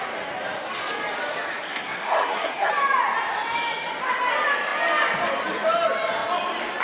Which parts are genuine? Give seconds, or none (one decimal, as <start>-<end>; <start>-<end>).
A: 0.0-1.7; 2.7-6.8